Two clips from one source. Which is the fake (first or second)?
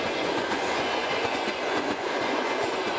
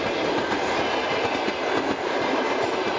first